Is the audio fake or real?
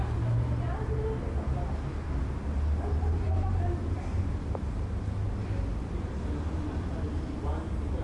real